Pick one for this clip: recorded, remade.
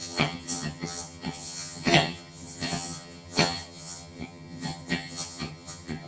remade